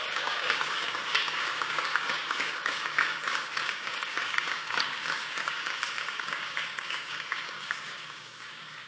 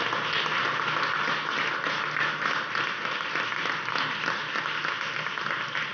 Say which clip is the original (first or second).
second